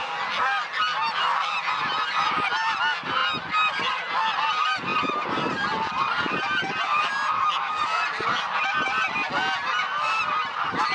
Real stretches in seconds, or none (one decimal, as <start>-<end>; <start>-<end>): 0.0-10.9